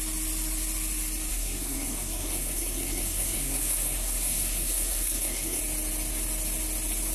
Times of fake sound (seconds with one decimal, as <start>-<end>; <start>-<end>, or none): 1.3-5.6